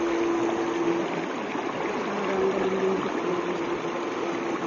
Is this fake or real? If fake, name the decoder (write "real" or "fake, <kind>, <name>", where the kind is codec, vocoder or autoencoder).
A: real